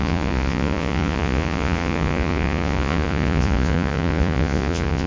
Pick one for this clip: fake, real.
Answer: fake